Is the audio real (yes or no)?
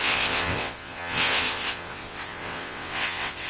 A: no